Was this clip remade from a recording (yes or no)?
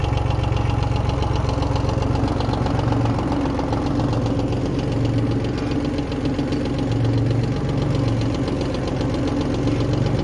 no